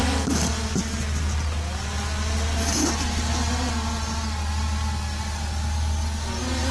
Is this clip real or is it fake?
real